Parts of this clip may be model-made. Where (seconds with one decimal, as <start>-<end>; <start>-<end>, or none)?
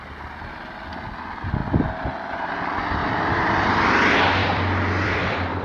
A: 3.0-3.7; 4.4-5.6